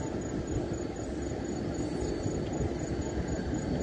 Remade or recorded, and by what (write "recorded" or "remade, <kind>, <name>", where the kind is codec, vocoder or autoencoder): recorded